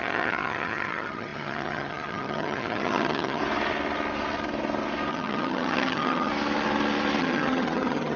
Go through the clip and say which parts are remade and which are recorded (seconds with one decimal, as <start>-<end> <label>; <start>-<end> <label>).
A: 0.0-3.4 remade; 3.4-5.1 recorded; 5.1-6.3 remade; 6.3-7.2 recorded; 7.2-8.2 remade